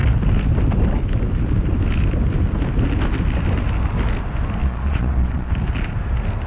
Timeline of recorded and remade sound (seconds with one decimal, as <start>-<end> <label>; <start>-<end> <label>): 0.0-4.6 recorded; 4.6-5.5 remade; 5.5-6.5 recorded